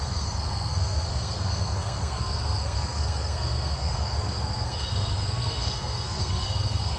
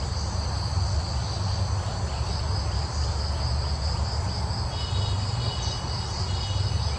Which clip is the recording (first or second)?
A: second